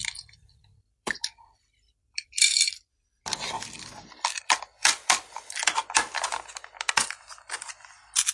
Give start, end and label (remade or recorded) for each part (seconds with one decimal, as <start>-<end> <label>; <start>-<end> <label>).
0.0-2.9 remade; 2.9-3.9 recorded; 3.9-5.0 remade; 5.0-8.3 recorded

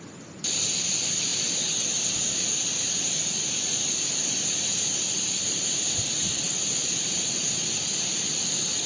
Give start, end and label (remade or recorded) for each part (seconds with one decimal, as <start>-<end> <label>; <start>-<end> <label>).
0.0-8.9 remade

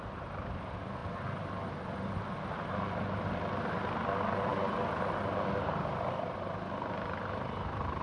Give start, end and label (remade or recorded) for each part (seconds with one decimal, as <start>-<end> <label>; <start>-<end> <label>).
0.0-1.0 recorded; 1.0-2.7 remade; 2.7-8.0 recorded

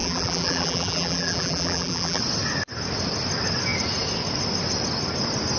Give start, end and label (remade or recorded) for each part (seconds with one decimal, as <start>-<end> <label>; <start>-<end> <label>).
0.0-2.2 remade; 2.2-5.6 recorded

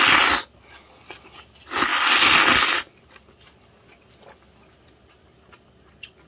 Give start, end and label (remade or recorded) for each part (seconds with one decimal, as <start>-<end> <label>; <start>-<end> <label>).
0.0-6.3 recorded

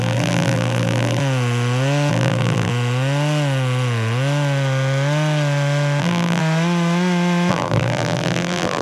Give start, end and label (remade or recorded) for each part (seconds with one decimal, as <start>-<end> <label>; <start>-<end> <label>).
0.0-1.2 remade; 1.2-2.1 recorded; 2.1-2.7 remade; 2.7-6.0 recorded; 6.0-6.4 remade; 6.4-7.5 recorded; 7.5-8.8 remade

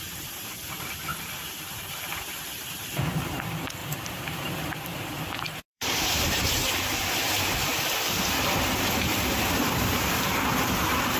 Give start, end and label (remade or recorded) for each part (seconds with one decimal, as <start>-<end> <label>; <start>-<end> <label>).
0.0-3.8 recorded; 3.8-7.4 remade; 7.4-11.2 recorded